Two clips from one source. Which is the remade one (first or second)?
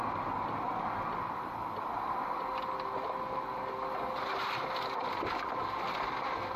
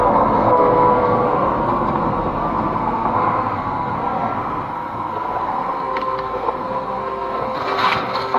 second